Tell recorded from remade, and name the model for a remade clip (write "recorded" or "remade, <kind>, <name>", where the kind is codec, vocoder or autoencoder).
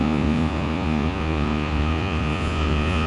remade, vocoder, Vocos